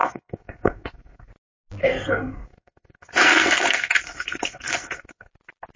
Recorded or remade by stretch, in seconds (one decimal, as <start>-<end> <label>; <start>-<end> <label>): 0.0-1.3 remade; 1.3-1.8 recorded; 1.8-5.3 remade; 5.3-5.8 recorded